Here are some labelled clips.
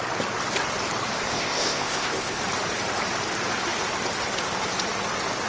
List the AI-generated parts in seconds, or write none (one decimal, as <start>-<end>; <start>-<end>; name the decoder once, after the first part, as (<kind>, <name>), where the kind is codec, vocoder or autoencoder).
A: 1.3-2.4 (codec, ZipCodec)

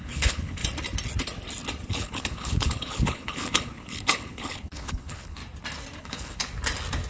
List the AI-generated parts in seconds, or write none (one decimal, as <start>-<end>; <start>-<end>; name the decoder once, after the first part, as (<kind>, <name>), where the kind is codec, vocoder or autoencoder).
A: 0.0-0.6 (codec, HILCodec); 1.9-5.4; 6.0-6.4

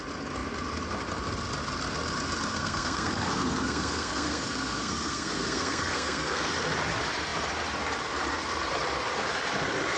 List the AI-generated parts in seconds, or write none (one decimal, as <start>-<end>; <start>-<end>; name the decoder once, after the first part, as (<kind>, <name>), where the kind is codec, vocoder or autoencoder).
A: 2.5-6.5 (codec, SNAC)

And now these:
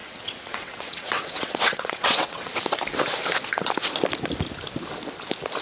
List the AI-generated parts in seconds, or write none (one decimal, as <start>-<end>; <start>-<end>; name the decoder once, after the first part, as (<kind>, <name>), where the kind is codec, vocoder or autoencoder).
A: 0.0-2.5 (vocoder, WaveNeXt)